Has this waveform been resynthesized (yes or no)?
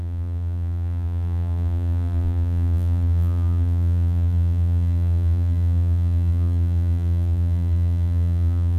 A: yes